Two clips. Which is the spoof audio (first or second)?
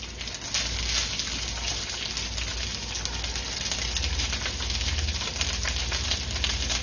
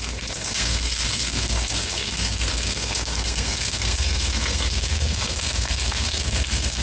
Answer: second